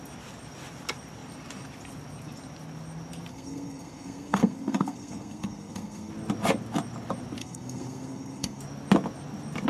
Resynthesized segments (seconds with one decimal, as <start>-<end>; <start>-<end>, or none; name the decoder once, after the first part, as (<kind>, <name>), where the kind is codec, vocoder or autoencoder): 3.3-6.1 (codec, SNAC); 7.4-8.6

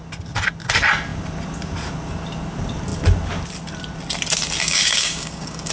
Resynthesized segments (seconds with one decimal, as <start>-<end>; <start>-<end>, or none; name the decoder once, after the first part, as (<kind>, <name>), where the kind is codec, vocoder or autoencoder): 4.6-5.7 (codec, DAC)

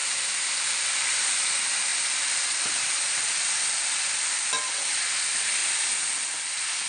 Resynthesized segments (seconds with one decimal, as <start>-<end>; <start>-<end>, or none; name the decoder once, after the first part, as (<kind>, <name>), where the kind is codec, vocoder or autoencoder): none